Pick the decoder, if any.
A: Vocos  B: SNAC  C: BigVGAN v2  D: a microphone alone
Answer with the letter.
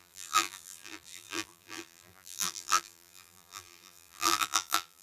C